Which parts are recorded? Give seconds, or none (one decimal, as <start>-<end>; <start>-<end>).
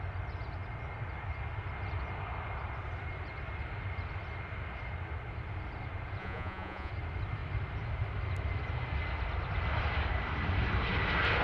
0.0-6.2; 6.9-11.4